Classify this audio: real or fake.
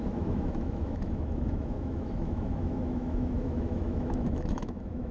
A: fake